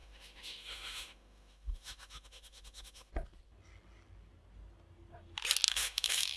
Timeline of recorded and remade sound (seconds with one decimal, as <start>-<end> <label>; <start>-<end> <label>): 0.0-3.1 remade; 3.1-5.7 recorded; 5.7-6.4 remade